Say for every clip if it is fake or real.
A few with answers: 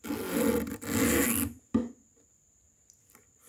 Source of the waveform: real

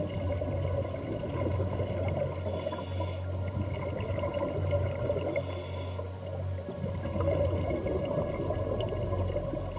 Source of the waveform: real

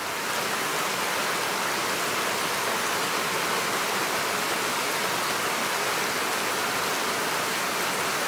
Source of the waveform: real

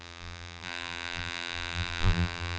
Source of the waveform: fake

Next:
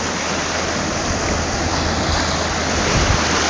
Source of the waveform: fake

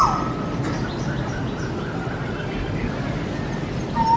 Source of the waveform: real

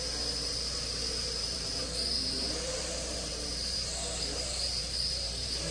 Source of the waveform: fake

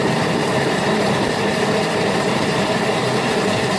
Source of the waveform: fake